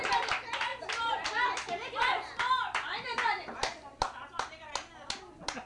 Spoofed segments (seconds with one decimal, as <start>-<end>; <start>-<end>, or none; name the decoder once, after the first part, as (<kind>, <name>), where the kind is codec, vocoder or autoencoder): none